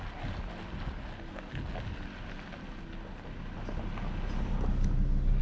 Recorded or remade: recorded